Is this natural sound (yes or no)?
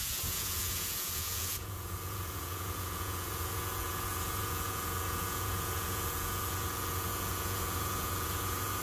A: no